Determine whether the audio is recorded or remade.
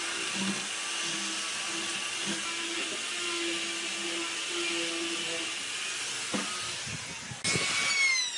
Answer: recorded